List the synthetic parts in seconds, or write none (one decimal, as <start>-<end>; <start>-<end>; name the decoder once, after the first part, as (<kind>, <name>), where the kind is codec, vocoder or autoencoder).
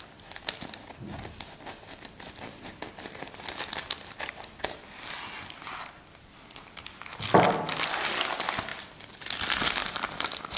none